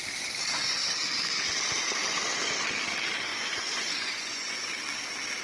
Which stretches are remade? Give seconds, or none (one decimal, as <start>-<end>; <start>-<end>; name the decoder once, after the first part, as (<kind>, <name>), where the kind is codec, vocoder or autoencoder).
3.3-4.7 (vocoder, Vocos)

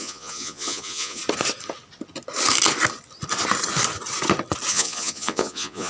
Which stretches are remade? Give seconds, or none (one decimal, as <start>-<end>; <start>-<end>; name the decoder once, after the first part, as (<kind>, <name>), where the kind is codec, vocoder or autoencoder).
0.0-1.2 (vocoder, Vocos); 4.7-5.9

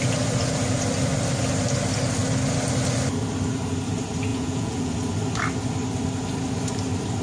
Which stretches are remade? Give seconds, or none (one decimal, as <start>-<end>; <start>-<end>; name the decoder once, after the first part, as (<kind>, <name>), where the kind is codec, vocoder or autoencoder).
4.3-4.9 (vocoder, Vocos)

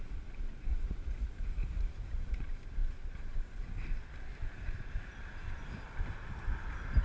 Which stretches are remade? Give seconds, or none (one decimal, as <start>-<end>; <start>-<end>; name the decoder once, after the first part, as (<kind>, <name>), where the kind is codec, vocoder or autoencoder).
0.7-2.4 (vocoder, Vocos)